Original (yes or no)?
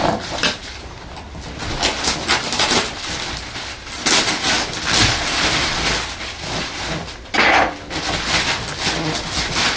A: yes